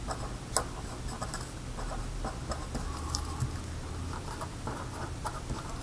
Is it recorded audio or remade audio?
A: recorded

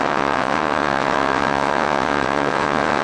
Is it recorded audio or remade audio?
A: remade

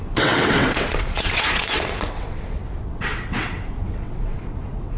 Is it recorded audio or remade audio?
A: remade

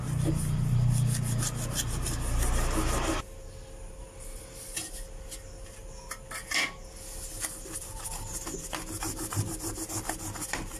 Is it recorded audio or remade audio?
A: recorded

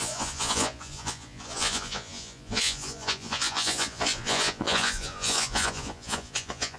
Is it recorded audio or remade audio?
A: remade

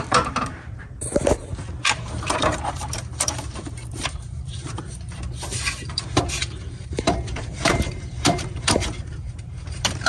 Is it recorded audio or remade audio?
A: remade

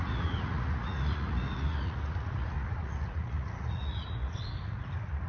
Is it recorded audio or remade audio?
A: remade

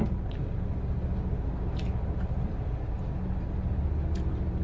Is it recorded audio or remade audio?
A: recorded